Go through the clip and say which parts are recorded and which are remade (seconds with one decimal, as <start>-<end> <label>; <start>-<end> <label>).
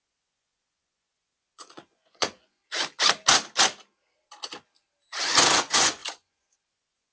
0.0-2.6 remade; 2.6-5.2 recorded; 5.2-7.1 remade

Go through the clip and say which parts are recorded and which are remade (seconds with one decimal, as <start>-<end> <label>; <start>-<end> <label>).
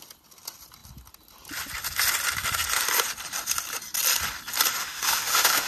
0.0-4.8 recorded; 4.8-5.7 remade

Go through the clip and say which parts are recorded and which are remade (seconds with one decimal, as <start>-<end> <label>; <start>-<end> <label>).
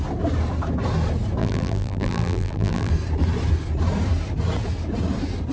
0.0-1.4 recorded; 1.4-2.9 remade; 2.9-5.5 recorded